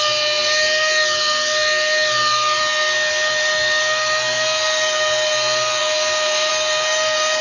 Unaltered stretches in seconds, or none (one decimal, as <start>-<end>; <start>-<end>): 0.0-5.8; 6.5-7.4